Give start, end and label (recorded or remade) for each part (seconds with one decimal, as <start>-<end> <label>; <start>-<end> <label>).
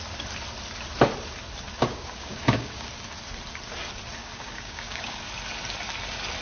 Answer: 0.0-1.9 recorded; 1.9-2.9 remade; 2.9-4.2 recorded; 4.2-5.2 remade; 5.2-6.4 recorded